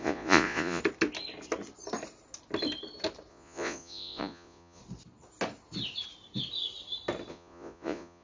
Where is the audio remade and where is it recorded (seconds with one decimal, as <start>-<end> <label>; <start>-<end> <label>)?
0.0-0.8 remade; 0.8-3.3 recorded; 3.3-4.8 remade; 4.8-7.3 recorded; 7.3-8.2 remade